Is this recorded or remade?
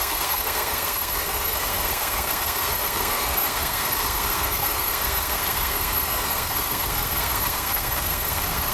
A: remade